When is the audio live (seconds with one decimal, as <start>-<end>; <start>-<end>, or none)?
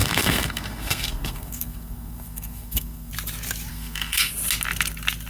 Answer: 3.1-3.7; 4.3-5.3